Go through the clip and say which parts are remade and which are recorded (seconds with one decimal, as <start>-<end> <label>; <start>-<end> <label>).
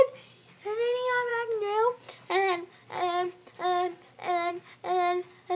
0.0-5.5 recorded